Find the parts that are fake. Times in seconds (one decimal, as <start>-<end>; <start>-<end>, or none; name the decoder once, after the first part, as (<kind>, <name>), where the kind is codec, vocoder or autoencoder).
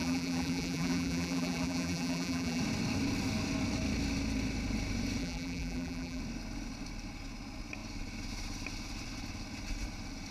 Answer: 0.0-2.6 (vocoder, BigVGAN v2); 5.2-6.2